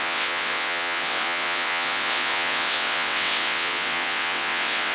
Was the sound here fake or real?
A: fake